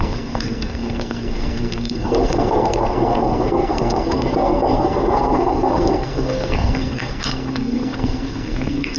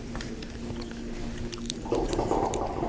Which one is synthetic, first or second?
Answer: first